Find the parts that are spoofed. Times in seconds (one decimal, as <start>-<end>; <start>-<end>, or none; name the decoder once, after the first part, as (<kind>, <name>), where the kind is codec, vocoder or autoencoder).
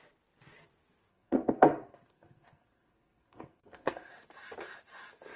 1.1-4.1 (codec, SNAC)